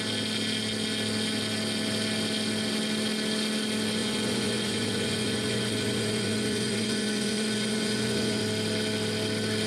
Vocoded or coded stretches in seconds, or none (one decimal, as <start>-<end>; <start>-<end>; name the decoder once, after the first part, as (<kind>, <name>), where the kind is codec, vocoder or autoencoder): 4.0-8.4 (vocoder, Vocos)